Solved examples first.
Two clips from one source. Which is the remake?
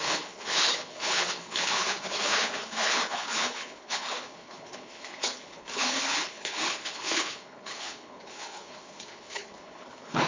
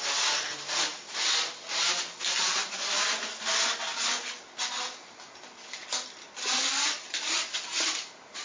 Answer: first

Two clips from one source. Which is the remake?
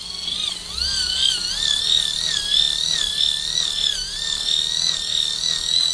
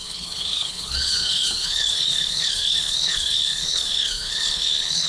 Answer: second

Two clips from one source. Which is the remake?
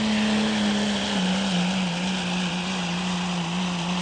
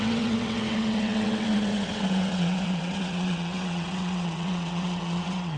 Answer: second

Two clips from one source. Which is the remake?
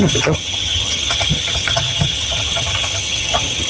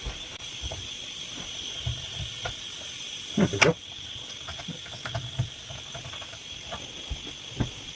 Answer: first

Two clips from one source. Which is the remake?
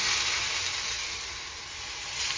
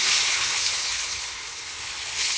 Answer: second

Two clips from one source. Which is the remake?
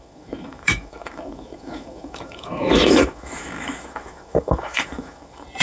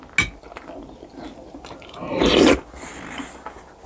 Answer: first